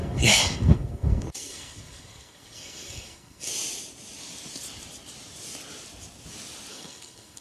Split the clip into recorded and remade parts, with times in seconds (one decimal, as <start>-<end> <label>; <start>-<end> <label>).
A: 0.0-3.5 remade; 3.5-6.7 recorded; 6.7-7.4 remade